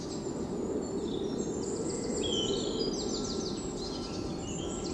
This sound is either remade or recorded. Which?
recorded